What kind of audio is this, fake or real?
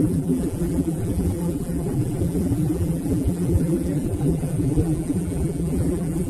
fake